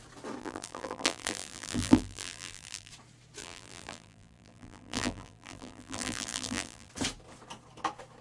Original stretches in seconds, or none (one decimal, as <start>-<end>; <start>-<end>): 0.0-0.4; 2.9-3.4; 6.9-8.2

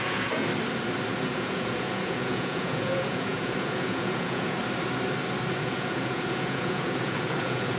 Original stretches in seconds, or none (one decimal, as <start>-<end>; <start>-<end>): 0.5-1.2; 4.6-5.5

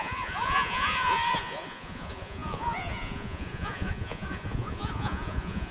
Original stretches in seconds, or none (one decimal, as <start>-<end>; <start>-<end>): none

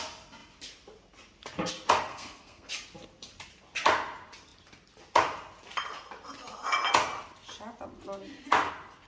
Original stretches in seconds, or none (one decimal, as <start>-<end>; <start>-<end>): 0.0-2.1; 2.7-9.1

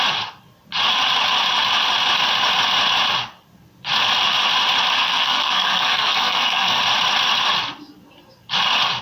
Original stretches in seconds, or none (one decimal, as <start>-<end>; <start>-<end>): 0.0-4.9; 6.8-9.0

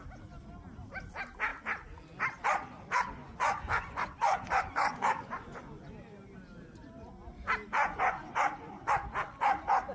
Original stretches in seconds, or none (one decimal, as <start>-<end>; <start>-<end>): 0.0-3.2; 5.9-7.8; 8.9-9.9